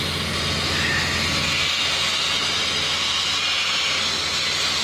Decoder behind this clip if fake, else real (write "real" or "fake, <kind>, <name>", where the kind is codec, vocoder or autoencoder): real